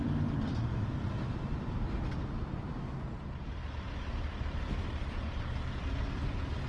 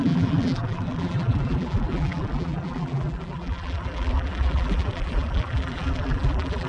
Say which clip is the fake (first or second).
second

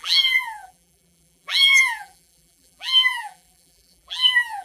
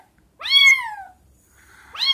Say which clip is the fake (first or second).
first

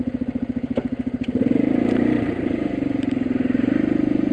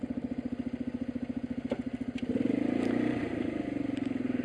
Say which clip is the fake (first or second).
first